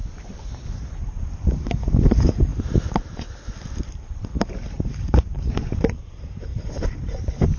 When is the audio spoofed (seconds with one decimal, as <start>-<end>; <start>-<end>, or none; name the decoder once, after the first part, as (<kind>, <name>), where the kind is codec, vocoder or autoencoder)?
0.0-2.5 (vocoder, BigVGAN v2); 3.8-6.5